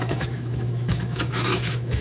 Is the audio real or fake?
fake